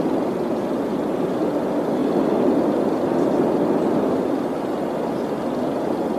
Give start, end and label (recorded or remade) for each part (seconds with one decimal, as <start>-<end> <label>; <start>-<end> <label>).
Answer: 0.0-6.2 recorded